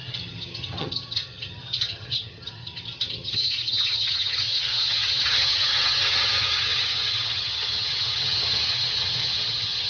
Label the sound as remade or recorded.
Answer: remade